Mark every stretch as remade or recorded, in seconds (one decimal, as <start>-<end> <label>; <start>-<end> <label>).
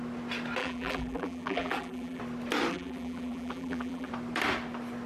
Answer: 0.0-0.6 recorded; 0.6-2.2 remade; 2.2-2.7 recorded; 2.7-4.1 remade; 4.1-5.1 recorded